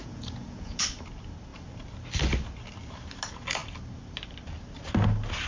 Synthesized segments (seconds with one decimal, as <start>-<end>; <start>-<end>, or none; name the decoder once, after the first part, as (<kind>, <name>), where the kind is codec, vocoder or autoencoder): 0.0-0.8 (vocoder, Vocos)